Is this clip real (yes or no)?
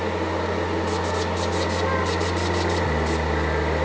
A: yes